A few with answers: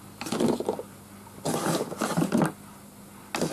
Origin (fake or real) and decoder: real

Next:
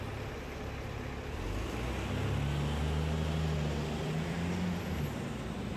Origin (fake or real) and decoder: real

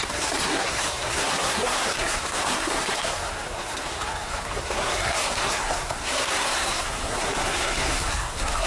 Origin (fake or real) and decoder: fake, codec, SNAC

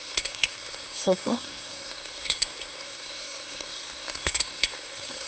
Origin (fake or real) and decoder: fake, codec, SNAC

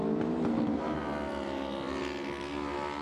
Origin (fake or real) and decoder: real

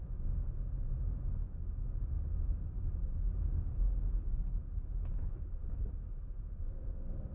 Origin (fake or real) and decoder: real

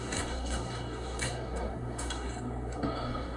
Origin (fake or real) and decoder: fake, codec, SNAC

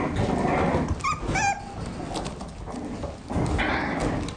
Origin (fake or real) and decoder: real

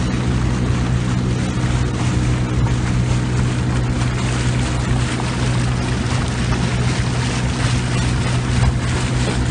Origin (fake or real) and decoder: real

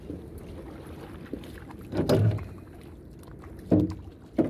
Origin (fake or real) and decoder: real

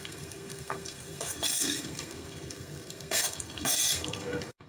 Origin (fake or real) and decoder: fake, codec, SNAC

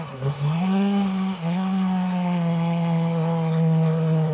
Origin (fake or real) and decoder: fake, codec, SNAC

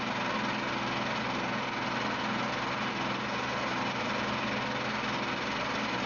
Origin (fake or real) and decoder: real